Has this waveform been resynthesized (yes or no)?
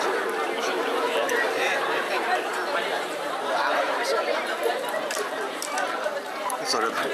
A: yes